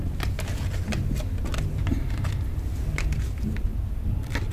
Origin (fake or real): real